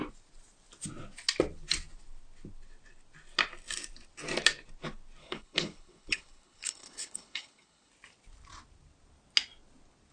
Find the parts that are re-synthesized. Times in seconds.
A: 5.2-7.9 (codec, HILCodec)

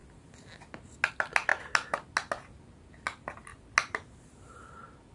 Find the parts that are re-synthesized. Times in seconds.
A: none